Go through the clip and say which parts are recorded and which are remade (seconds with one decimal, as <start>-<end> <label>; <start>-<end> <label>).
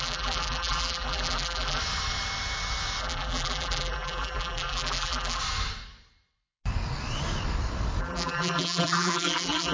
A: 0.0-1.8 remade; 1.8-3.0 recorded; 3.0-5.4 remade; 5.4-8.0 recorded; 8.0-9.7 remade